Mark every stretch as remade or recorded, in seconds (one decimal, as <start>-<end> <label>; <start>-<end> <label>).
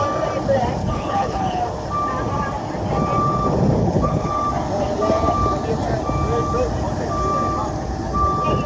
0.0-0.8 recorded; 0.8-1.6 remade; 1.6-3.8 recorded; 3.8-4.3 remade; 4.3-8.7 recorded